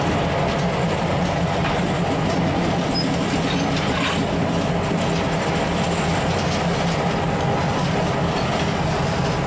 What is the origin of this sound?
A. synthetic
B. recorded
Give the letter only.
B